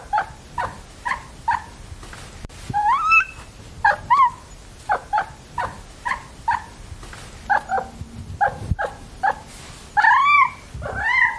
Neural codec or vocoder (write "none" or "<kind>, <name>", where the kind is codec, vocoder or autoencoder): none